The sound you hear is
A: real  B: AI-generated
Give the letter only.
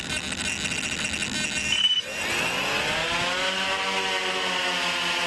A